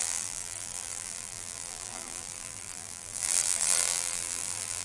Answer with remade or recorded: remade